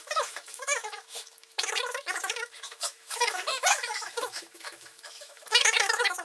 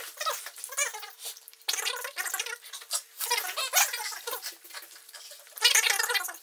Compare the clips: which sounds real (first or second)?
second